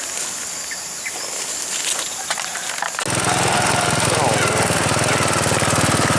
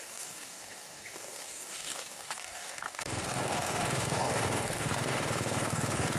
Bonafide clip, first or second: first